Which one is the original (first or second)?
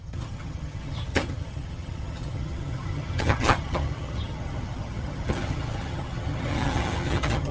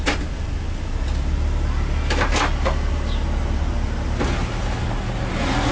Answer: second